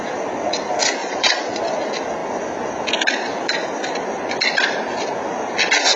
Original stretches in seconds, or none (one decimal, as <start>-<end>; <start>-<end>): 0.0-1.0; 1.6-6.0